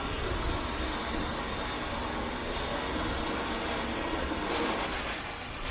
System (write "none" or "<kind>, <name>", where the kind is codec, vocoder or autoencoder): none